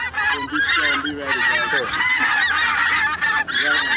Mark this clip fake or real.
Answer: real